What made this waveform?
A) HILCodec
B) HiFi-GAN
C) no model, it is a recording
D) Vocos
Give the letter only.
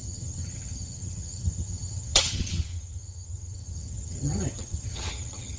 B